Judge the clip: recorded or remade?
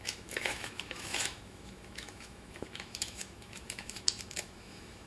remade